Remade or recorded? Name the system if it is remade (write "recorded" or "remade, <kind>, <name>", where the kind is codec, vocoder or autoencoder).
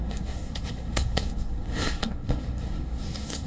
remade, codec, SNAC